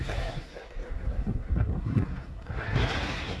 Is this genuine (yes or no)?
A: no